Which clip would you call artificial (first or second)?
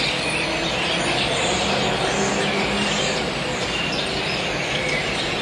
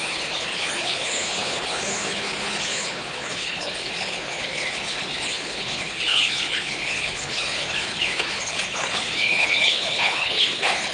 second